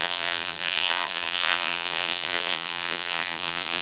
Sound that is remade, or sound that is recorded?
remade